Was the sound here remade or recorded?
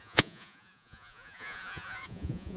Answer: remade